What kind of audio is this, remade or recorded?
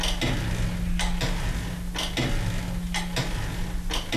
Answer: recorded